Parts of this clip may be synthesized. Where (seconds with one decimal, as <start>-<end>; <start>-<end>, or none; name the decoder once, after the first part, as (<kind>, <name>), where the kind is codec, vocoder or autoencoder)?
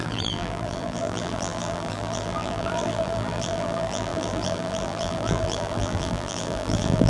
0.0-7.1 (vocoder, BigVGAN v2)